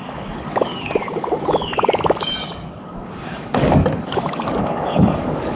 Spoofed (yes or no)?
yes